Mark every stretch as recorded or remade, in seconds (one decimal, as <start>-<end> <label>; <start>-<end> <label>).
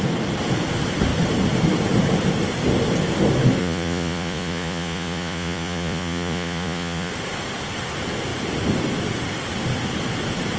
0.0-3.6 recorded; 3.6-7.1 remade; 7.1-10.6 recorded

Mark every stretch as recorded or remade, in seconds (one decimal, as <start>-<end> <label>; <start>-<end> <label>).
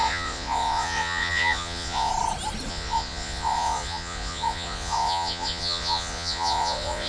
0.0-2.1 remade; 2.1-2.7 recorded; 2.7-7.1 remade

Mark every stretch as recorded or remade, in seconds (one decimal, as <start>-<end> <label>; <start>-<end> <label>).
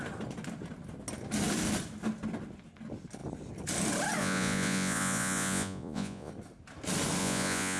0.0-4.2 recorded; 4.2-6.3 remade; 6.3-7.2 recorded; 7.2-7.8 remade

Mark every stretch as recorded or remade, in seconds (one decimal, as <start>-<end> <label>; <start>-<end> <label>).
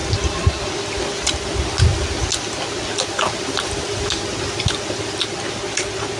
0.0-6.2 recorded